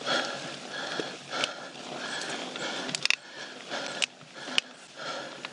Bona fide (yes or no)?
yes